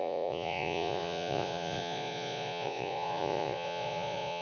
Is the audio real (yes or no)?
no